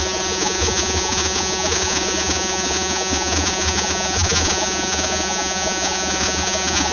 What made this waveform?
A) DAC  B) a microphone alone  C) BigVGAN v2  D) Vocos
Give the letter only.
D